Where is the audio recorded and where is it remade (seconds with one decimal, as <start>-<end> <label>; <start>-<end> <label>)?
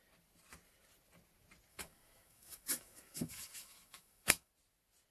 0.0-1.7 recorded; 1.7-4.5 remade; 4.5-5.1 recorded